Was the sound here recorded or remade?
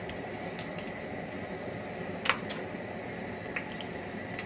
recorded